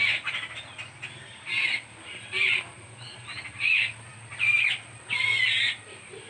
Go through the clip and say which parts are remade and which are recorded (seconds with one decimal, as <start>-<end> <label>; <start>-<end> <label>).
0.0-6.3 recorded